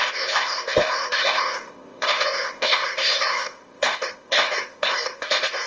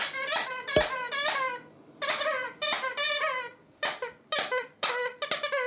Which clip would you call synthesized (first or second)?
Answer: first